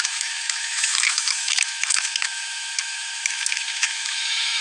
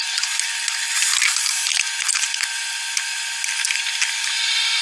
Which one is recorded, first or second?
second